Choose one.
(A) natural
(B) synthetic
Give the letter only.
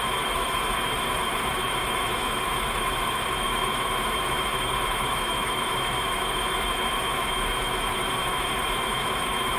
B